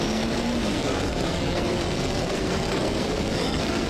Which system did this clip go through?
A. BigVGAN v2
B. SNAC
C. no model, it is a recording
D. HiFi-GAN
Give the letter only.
B